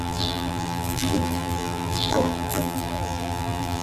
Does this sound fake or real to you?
fake